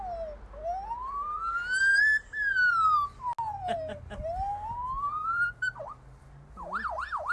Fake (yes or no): no